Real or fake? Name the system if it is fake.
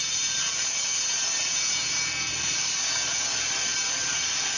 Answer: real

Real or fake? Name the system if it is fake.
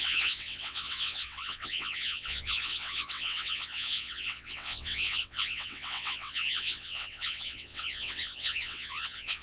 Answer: fake, vocoder, WaveNeXt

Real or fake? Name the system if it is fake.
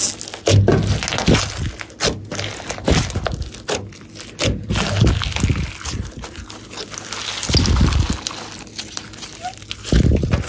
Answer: real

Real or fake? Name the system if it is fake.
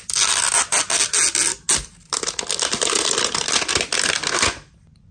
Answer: real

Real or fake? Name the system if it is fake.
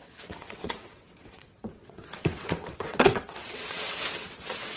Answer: fake, vocoder, WaveNeXt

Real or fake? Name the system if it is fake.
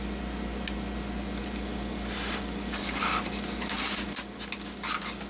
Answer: real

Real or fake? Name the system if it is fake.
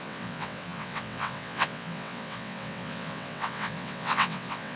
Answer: fake, vocoder, WaveNeXt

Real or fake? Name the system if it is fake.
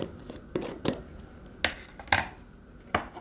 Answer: real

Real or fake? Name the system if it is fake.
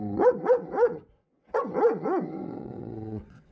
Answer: fake, vocoder, WaveNeXt